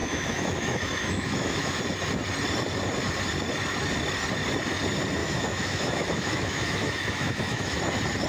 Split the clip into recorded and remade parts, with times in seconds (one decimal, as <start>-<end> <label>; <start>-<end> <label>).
0.0-1.8 remade; 1.8-5.2 recorded; 5.2-7.8 remade; 7.8-8.3 recorded